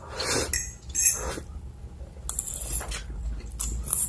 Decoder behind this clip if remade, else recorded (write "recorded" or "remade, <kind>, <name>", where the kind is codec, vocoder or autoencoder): recorded